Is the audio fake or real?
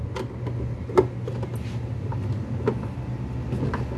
real